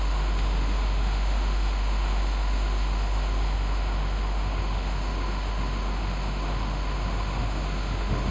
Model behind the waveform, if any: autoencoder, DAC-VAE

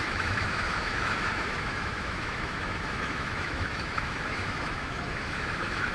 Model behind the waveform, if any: autoencoder, DAC-VAE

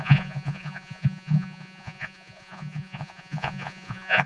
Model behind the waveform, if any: vocoder, Vocos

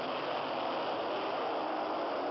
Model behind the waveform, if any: none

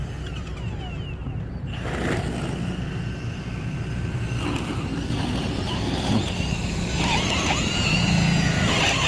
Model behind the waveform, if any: none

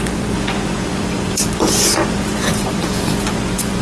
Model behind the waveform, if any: vocoder, Vocos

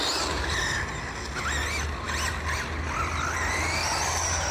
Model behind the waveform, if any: none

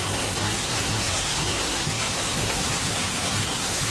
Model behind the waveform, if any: codec, SNAC